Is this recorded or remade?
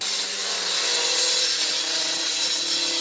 recorded